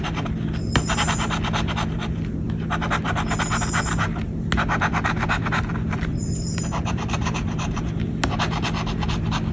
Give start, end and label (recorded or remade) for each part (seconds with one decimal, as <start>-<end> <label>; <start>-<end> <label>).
0.0-6.1 recorded; 6.1-7.9 remade; 7.9-9.5 recorded